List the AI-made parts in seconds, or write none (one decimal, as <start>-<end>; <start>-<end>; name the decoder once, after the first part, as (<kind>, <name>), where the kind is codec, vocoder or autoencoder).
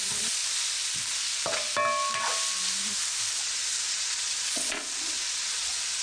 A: 0.0-0.4 (vocoder, Vocos); 3.4-6.0